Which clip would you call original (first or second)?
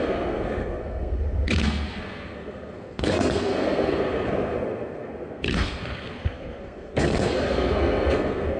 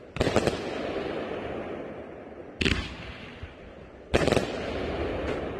second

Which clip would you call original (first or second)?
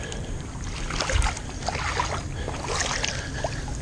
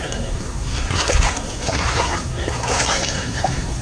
first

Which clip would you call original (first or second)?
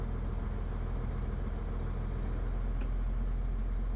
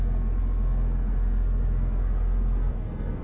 first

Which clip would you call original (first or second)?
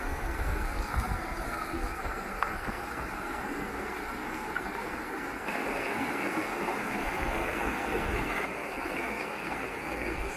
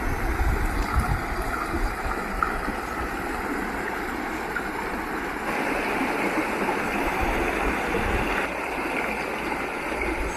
second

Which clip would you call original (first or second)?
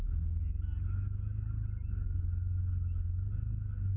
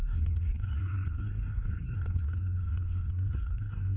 first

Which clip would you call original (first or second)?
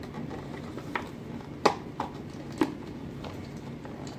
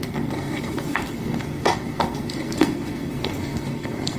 first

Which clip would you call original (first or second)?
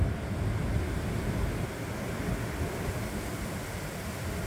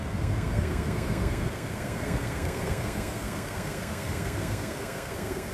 first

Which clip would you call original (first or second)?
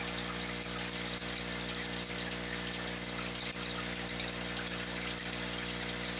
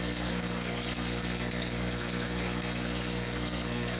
first